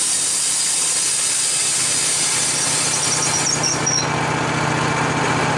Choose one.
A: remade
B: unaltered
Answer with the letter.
B